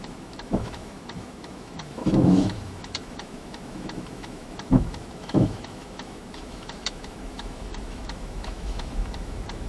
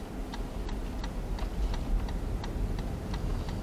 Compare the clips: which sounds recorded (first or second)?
second